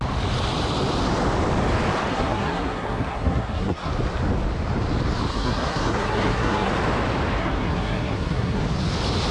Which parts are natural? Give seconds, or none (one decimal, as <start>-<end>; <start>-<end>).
0.0-2.1; 3.9-5.3; 6.7-7.4; 8.6-9.3